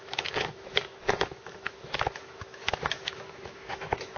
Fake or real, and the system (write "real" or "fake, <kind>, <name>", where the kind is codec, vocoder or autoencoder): fake, autoencoder, DAC-VAE